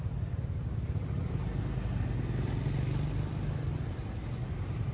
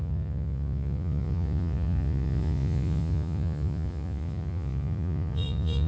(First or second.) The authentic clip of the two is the first